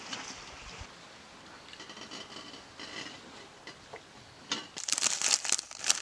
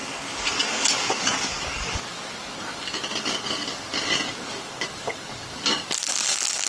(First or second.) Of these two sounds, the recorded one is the first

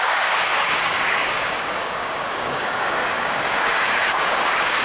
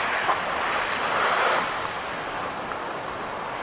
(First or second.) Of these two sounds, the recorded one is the second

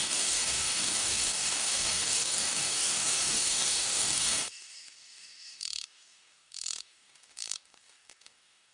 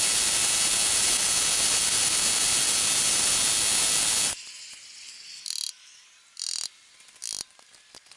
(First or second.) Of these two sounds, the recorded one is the second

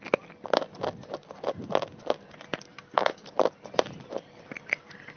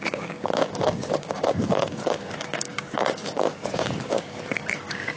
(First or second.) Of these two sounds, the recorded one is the first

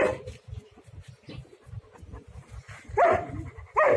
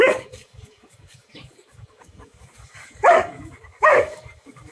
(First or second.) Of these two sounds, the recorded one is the first